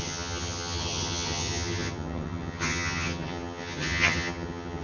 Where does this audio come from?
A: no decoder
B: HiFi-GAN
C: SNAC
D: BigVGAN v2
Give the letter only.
B